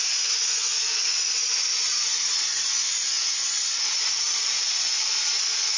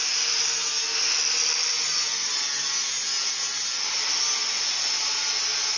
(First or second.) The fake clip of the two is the first